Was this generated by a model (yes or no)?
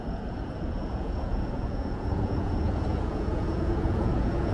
yes